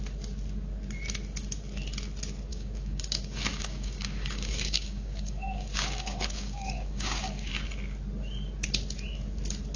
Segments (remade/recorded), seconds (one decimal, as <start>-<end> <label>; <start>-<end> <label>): 0.0-2.5 recorded; 2.5-7.5 remade; 7.5-9.8 recorded